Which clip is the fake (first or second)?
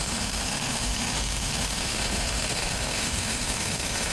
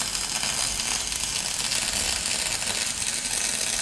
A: first